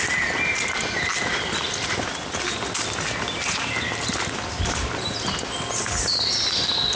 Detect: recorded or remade recorded